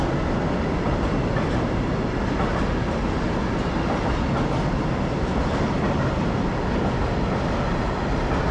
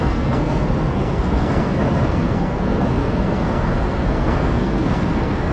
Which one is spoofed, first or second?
second